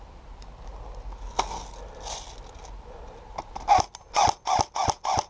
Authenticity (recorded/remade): recorded